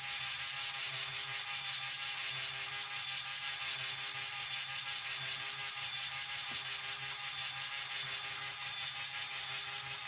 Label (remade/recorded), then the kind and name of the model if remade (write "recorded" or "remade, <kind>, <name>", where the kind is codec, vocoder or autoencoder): recorded